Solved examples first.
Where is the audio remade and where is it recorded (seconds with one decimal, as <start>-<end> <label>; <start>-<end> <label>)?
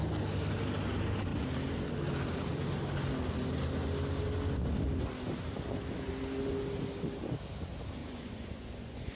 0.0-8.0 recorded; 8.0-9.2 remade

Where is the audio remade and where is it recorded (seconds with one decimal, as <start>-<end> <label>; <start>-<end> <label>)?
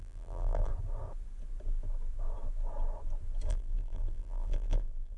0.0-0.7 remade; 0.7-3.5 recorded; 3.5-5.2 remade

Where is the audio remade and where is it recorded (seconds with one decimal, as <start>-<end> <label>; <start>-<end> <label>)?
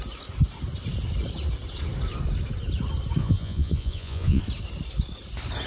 0.0-3.2 recorded; 3.2-4.4 remade; 4.4-5.7 recorded